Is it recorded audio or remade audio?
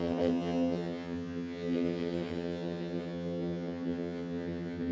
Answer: remade